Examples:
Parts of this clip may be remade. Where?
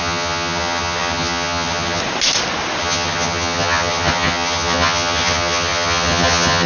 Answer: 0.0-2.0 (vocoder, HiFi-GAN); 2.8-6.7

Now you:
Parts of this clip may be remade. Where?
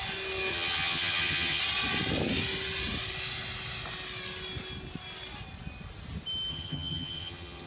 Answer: 0.5-1.6 (vocoder, HiFi-GAN); 6.5-7.7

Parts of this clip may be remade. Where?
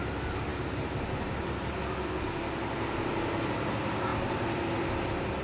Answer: 4.1-4.6 (vocoder, BigVGAN v2)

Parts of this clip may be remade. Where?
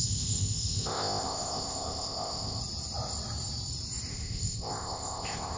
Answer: 0.0-2.6 (codec, ZipCodec); 4.1-5.6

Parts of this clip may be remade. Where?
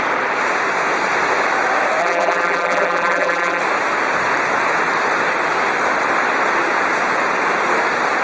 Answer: 2.0-3.6 (vocoder, BigVGAN v2)